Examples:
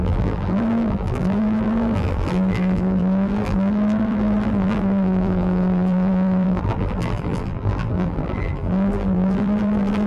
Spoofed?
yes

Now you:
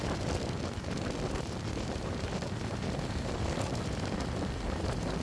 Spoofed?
no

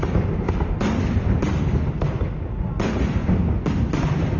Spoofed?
no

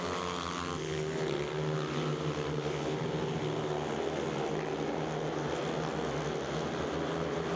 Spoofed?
no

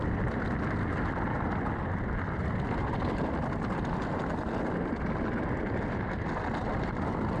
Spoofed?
no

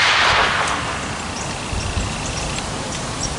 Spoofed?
no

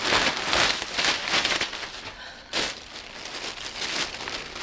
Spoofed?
yes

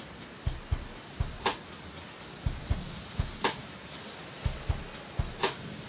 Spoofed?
no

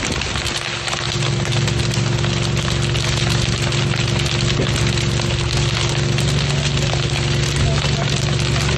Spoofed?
no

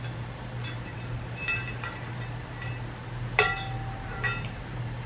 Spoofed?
yes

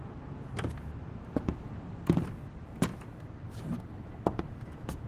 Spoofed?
no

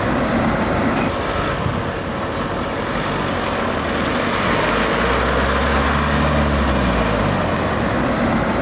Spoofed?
no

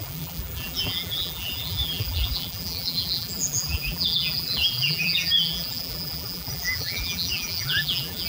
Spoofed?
yes